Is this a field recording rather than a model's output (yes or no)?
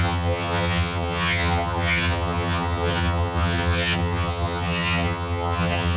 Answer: no